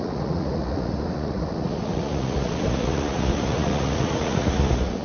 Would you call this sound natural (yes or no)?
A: no